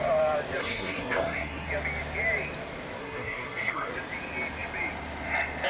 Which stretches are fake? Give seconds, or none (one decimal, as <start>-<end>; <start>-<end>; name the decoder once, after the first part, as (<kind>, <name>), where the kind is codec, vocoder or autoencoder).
0.6-1.7 (codec, SNAC); 3.0-3.9